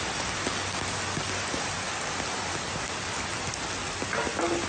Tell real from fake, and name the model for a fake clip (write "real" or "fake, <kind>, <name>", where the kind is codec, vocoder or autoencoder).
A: real